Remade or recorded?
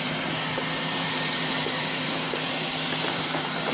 remade